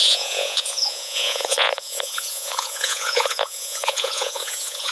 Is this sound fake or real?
fake